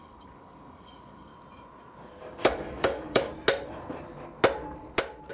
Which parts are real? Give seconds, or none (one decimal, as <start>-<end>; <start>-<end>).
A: 1.3-2.4; 3.3-5.3